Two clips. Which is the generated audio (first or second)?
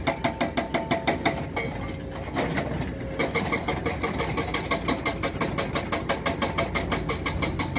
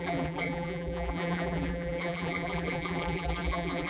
second